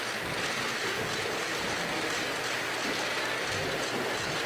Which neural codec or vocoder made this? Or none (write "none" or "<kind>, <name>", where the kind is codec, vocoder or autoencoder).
none